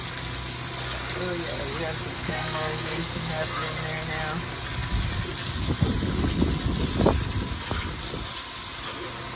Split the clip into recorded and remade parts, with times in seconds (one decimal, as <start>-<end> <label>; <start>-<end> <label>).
0.0-2.1 recorded; 2.1-3.3 remade; 3.3-9.4 recorded